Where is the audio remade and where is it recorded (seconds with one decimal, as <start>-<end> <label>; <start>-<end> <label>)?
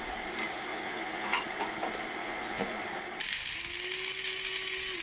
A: 0.0-0.7 recorded; 0.7-1.4 remade; 1.4-2.2 recorded; 2.2-2.8 remade; 2.8-5.0 recorded